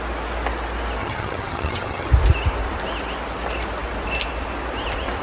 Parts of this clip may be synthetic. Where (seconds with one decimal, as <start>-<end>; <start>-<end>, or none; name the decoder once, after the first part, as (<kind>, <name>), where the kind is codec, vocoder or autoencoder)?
1.0-2.1 (vocoder, HiFi-GAN)